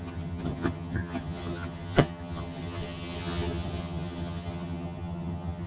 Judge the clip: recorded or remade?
remade